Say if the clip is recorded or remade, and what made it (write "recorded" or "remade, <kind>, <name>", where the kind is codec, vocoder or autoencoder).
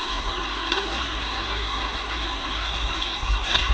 remade, codec, SNAC